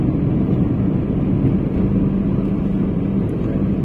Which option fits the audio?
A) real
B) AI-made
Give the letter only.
A